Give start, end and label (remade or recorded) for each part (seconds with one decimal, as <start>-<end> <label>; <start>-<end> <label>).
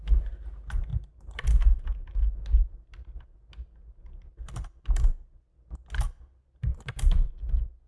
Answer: 0.0-0.9 recorded; 0.9-1.8 remade; 1.8-4.0 recorded; 4.0-5.1 remade; 5.1-6.7 recorded; 6.7-7.3 remade; 7.3-7.9 recorded